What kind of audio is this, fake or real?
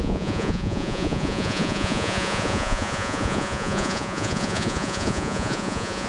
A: fake